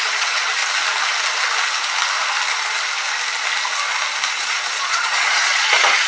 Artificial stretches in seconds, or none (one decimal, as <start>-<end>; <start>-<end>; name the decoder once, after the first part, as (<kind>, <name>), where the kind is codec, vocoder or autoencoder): 0.0-0.6 (vocoder, Vocos); 4.3-6.1